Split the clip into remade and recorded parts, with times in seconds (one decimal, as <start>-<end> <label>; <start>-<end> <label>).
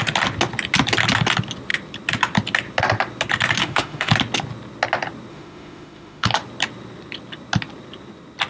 0.0-3.6 recorded; 3.6-4.1 remade; 4.1-5.3 recorded; 5.3-6.3 remade; 6.3-8.5 recorded